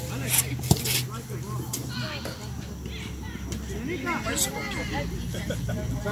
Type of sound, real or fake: real